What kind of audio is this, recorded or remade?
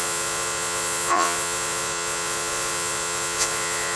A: remade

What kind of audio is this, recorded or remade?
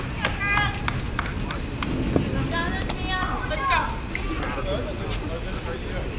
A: recorded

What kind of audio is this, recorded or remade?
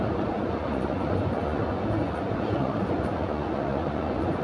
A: remade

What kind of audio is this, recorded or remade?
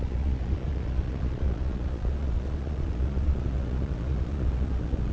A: remade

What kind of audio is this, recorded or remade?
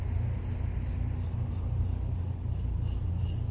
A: recorded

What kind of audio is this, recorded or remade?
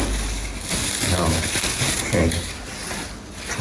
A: recorded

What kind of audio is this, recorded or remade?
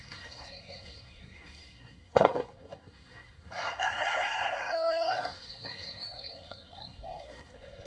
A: remade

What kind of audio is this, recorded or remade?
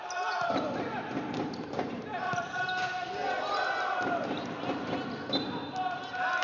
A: recorded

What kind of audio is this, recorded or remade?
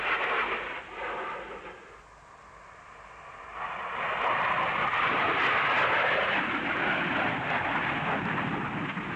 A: recorded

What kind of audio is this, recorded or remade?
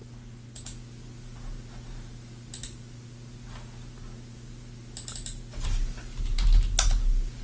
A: recorded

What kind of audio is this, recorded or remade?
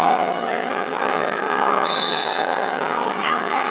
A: remade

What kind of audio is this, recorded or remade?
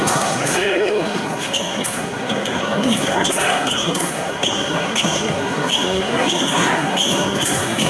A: remade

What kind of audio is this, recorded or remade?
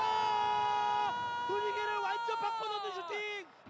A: recorded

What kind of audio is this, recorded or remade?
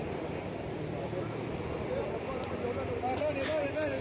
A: recorded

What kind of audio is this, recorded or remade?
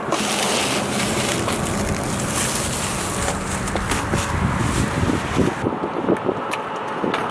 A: recorded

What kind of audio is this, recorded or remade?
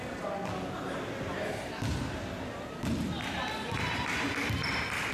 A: recorded